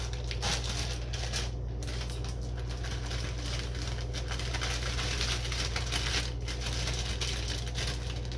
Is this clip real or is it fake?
real